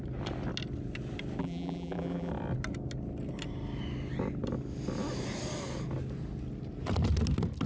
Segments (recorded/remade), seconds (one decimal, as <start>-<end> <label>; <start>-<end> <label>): 0.0-1.4 recorded; 1.4-2.3 remade; 2.3-7.7 recorded